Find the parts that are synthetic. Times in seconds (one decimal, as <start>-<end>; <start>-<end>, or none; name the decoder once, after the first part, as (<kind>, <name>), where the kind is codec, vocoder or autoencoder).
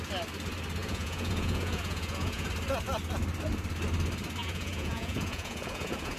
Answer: 0.8-2.5 (vocoder, Vocos); 4.4-6.2